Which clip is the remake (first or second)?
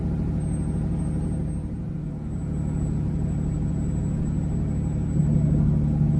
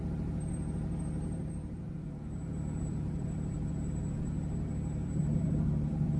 second